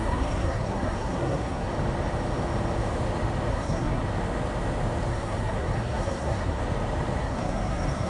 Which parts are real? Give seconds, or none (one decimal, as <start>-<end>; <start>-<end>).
1.7-3.5; 4.0-5.1; 6.6-7.2